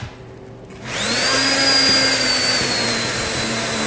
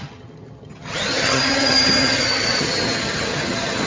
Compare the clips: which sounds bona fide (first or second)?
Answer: first